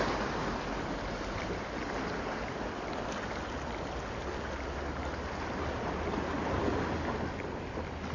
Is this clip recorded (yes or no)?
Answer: yes